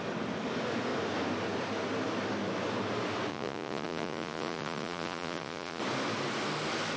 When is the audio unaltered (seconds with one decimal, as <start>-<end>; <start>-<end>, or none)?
0.0-3.3; 5.8-7.0